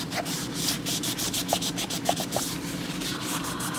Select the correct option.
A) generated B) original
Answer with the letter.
A